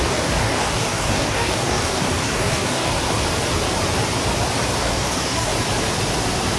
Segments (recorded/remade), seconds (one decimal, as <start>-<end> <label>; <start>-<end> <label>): 0.0-2.9 remade; 2.9-4.8 recorded; 4.8-5.5 remade; 5.5-6.6 recorded

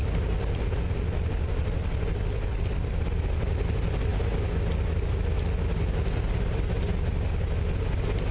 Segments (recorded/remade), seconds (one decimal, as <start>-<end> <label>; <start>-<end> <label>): 0.0-8.3 recorded